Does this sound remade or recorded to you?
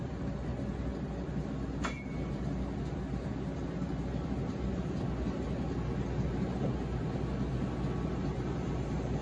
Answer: recorded